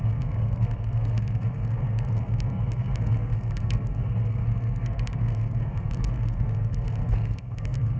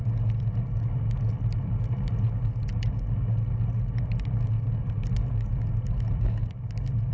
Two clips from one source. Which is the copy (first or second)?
first